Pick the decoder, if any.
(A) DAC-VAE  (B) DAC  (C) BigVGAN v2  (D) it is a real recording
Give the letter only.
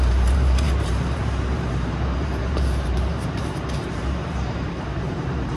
C